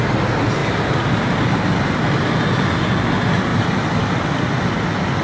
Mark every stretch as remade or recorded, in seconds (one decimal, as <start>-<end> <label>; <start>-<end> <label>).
0.0-3.5 recorded; 3.5-4.6 remade; 4.6-5.2 recorded